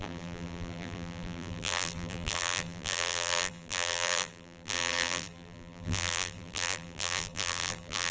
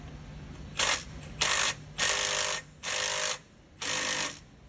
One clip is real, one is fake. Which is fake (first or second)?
first